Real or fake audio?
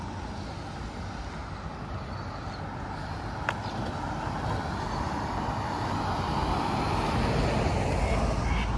real